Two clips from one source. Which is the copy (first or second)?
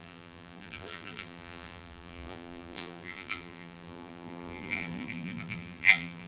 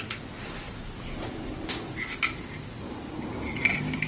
first